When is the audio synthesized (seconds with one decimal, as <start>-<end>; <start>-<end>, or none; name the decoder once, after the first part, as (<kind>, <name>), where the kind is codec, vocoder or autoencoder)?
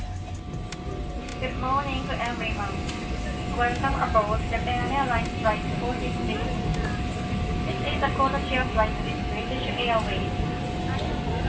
none